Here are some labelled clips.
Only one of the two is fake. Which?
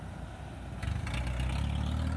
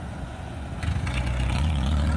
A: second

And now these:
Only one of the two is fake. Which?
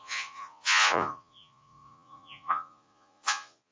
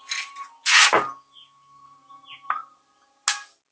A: first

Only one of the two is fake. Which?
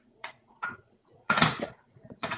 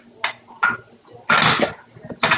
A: first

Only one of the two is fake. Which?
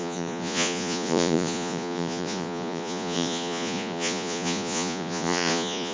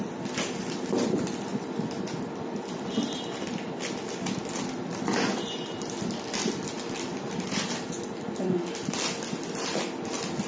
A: first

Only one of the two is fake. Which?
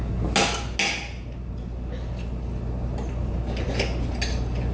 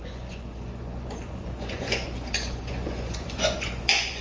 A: second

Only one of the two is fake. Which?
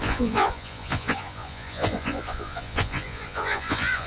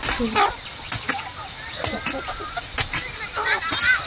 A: first